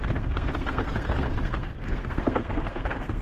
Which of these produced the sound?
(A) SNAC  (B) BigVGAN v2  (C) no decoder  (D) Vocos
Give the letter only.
A